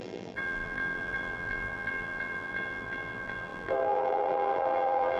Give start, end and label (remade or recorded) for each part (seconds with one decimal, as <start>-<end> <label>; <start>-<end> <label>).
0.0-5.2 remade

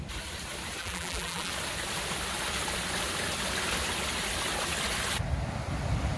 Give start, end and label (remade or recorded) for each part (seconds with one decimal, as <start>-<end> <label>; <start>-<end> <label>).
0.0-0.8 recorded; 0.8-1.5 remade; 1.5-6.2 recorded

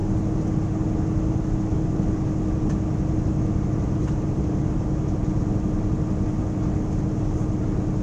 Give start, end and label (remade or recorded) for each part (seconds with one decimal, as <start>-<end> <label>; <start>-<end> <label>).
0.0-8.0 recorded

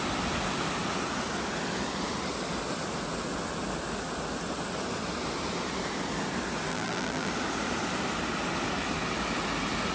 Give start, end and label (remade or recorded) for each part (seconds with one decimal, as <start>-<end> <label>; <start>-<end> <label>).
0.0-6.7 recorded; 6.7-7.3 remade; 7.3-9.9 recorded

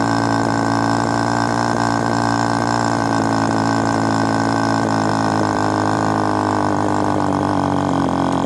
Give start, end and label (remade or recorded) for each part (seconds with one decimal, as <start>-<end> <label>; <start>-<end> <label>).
0.0-5.1 recorded; 5.1-8.0 remade; 8.0-8.5 recorded

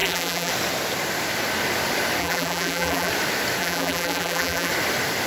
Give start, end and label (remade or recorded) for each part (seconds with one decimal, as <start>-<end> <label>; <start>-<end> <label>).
0.0-0.5 remade; 0.5-2.2 recorded; 2.2-3.1 remade; 3.1-3.6 recorded; 3.6-4.7 remade; 4.7-5.3 recorded

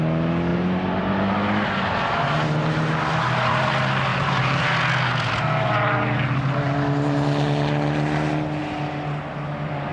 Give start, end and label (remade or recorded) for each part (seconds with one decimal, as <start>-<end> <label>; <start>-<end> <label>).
0.0-0.5 recorded; 0.5-1.3 remade; 1.3-4.1 recorded; 4.1-4.6 remade; 4.6-9.9 recorded